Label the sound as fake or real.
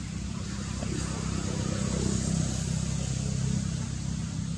real